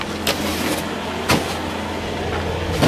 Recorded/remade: recorded